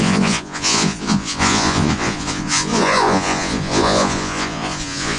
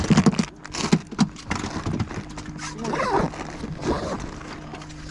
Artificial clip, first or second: first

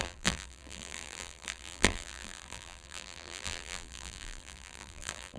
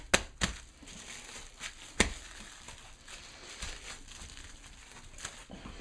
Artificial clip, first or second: first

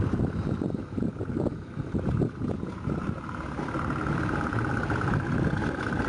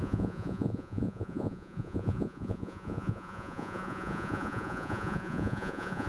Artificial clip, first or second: second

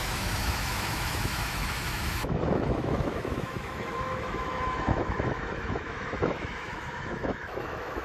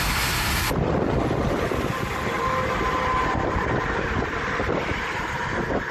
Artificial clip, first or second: first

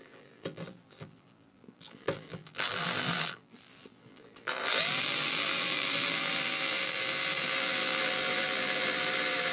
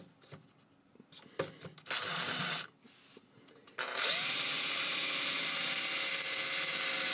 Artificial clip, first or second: first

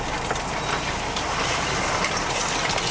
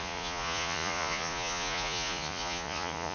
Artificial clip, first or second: second